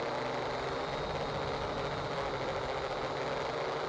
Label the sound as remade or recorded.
recorded